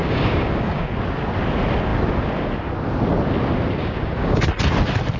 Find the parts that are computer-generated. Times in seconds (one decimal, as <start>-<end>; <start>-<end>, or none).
0.0-0.9; 3.8-4.4

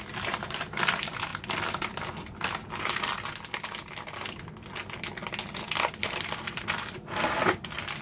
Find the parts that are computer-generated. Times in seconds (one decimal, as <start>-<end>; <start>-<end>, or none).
none